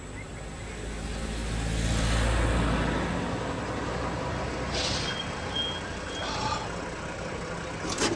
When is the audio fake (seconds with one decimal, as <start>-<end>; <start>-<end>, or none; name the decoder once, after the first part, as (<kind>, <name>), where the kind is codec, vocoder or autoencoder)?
none